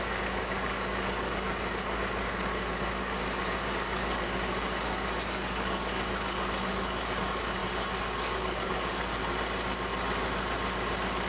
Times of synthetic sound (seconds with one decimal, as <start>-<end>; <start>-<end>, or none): 0.0-9.2